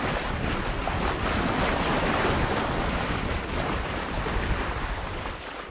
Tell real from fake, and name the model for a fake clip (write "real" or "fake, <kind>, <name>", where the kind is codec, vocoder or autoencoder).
fake, vocoder, BigVGAN v2